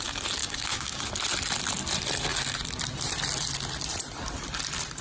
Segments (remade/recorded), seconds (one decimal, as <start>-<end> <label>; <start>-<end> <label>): 0.0-0.4 recorded; 0.4-1.0 remade; 1.0-5.0 recorded